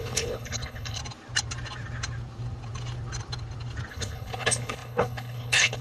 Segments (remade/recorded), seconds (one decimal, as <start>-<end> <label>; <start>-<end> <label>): 0.0-1.0 remade; 1.0-3.9 recorded; 3.9-5.8 remade